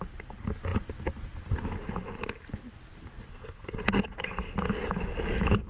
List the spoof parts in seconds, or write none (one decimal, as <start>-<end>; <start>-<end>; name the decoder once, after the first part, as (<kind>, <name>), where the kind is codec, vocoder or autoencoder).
3.3-4.0 (codec, SNAC)